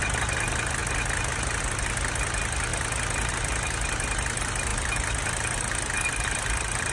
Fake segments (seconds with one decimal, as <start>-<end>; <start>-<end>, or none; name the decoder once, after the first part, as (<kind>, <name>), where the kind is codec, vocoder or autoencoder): none